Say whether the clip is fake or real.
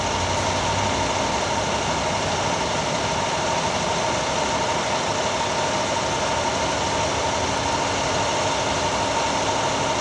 real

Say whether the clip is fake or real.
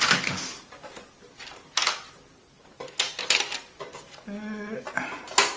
real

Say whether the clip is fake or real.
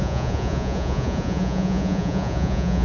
fake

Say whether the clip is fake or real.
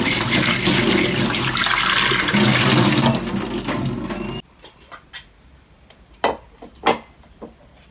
real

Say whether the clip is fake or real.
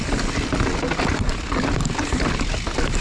real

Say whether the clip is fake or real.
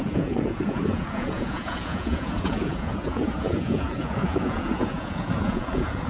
fake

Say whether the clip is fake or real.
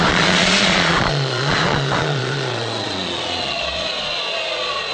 fake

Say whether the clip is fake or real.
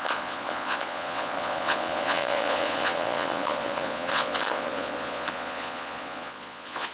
fake